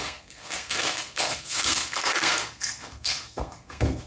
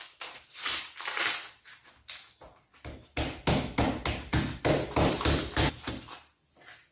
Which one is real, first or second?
second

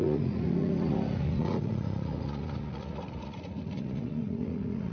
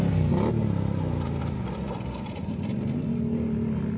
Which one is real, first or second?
second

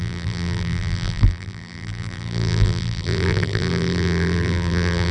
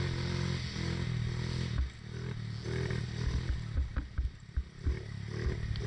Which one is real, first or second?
second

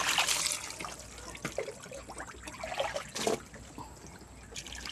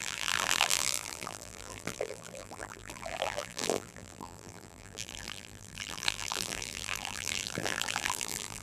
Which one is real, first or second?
first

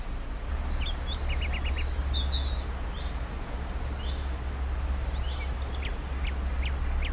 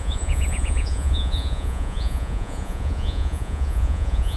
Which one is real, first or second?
first